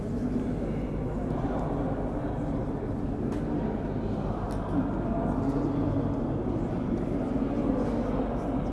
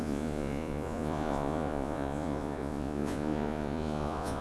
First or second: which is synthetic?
second